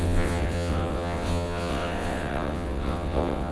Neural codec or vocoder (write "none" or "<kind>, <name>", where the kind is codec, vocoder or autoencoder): vocoder, WaveNeXt